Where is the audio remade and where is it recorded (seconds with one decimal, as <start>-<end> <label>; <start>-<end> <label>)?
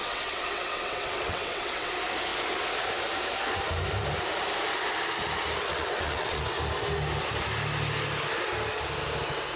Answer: 0.0-1.9 remade; 1.9-5.7 recorded; 5.7-6.4 remade; 6.4-9.6 recorded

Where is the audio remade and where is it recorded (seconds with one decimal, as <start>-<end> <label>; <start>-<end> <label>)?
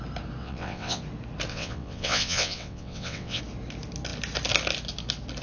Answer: 0.0-0.4 recorded; 0.4-1.0 remade; 1.0-1.5 recorded; 1.5-3.4 remade; 3.4-5.4 recorded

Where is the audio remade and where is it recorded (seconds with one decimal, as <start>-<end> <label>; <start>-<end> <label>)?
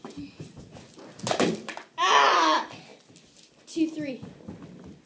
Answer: 0.0-5.1 recorded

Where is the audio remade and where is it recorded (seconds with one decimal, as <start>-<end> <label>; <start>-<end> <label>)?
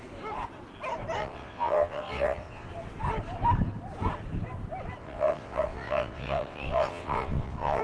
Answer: 0.0-1.2 recorded; 1.2-2.7 remade; 2.7-5.0 recorded; 5.0-7.8 remade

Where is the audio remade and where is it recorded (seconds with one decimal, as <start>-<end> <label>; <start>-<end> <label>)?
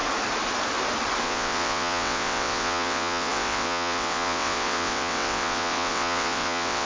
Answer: 0.0-1.2 recorded; 1.2-6.9 remade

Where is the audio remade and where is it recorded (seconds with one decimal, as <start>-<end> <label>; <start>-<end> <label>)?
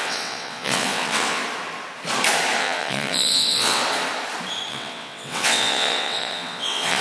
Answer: 0.0-1.4 remade; 1.4-2.6 recorded; 2.6-3.8 remade; 3.8-4.7 recorded; 4.7-7.0 remade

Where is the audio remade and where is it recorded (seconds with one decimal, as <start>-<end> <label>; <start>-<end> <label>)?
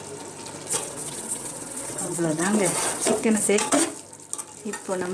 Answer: 0.0-0.7 recorded; 0.7-3.8 remade; 3.8-5.1 recorded